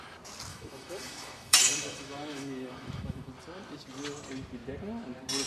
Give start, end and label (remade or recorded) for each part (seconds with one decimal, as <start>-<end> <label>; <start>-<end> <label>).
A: 0.0-0.5 recorded; 0.5-3.3 remade; 3.3-5.5 recorded